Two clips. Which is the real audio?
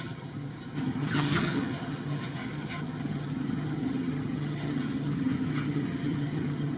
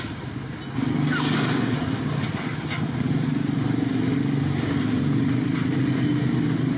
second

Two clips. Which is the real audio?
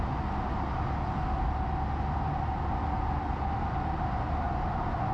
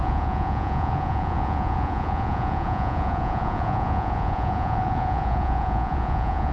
first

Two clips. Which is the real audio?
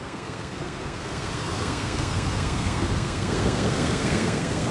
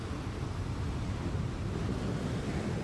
second